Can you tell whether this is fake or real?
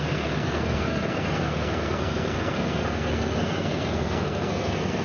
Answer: fake